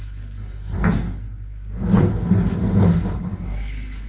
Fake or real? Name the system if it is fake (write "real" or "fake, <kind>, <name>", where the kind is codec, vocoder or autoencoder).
fake, codec, SNAC